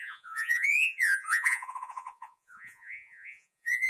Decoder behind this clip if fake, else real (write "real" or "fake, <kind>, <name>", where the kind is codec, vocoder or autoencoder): fake, vocoder, Vocos